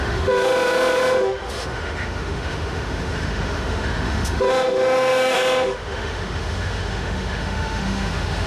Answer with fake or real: fake